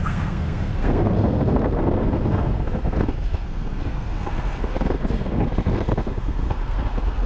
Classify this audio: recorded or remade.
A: remade